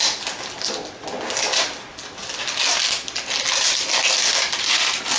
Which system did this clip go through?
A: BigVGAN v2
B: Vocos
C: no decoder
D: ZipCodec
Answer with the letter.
C